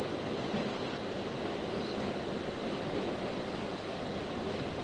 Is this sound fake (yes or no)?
no